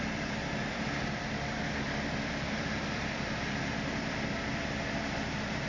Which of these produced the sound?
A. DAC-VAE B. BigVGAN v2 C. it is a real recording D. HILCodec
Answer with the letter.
B